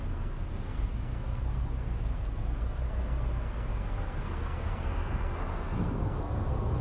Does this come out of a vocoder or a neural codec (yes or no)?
yes